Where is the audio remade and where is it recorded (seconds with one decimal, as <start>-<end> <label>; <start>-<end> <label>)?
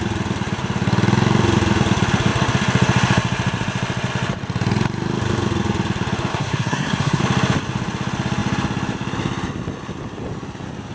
0.0-6.3 recorded; 6.3-7.2 remade; 7.2-10.9 recorded